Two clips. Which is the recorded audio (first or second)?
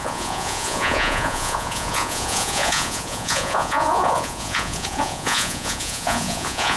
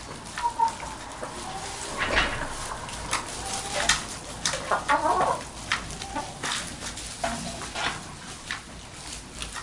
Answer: second